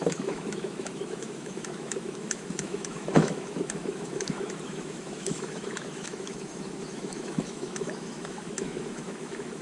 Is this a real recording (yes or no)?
no